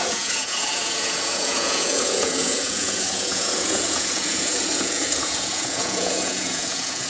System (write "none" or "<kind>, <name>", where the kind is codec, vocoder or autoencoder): vocoder, Vocos